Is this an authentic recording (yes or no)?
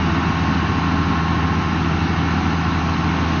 yes